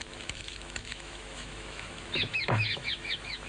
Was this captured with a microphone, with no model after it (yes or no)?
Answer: no